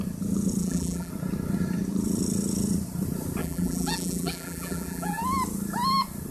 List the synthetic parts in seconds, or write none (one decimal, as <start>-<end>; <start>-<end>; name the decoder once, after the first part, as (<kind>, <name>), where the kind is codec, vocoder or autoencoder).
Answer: 0.6-1.1 (vocoder, BigVGAN v2); 3.4-5.2